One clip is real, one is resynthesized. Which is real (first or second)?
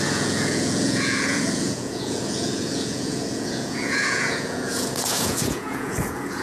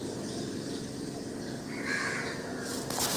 second